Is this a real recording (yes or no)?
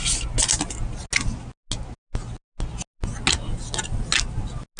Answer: yes